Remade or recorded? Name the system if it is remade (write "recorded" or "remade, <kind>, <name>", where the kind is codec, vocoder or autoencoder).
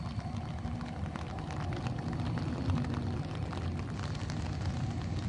recorded